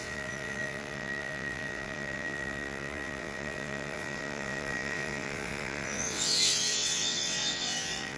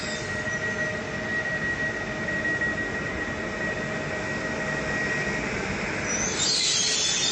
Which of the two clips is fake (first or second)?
first